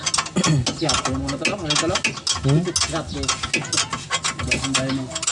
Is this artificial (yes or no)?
no